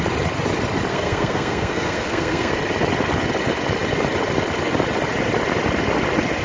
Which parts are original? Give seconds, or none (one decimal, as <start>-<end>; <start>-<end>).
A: 0.0-0.9; 2.5-6.4